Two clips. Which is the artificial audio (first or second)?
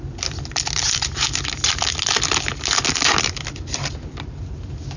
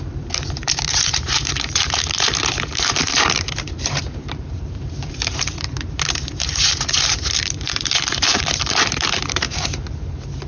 second